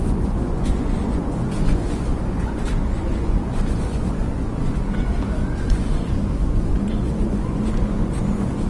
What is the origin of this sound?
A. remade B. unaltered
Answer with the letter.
A